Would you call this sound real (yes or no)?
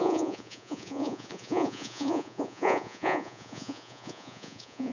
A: no